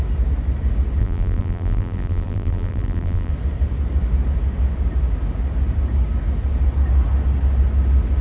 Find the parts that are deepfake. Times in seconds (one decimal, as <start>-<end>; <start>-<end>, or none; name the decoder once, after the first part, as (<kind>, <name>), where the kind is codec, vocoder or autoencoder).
1.0-3.3 (vocoder, BigVGAN v2)